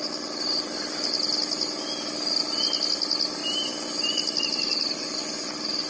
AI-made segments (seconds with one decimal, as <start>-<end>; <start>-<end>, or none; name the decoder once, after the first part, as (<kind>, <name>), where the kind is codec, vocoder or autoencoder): none